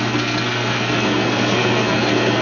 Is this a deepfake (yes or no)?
yes